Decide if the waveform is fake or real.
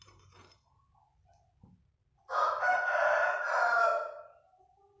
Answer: real